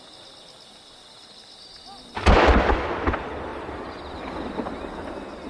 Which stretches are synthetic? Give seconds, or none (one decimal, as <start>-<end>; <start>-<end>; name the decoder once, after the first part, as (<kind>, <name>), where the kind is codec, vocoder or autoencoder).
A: 3.5-4.1 (vocoder, BigVGAN v2)